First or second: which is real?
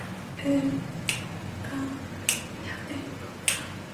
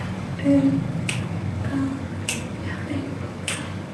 first